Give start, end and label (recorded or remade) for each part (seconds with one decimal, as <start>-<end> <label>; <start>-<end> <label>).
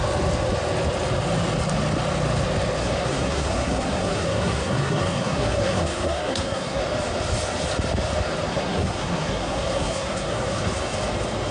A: 0.0-2.8 recorded; 2.8-6.8 remade; 6.8-8.5 recorded; 8.5-10.6 remade; 10.6-11.5 recorded